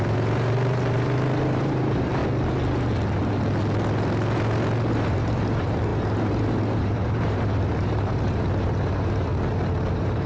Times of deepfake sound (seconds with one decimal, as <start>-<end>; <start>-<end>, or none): 0.0-2.2; 4.9-9.3; 9.9-10.3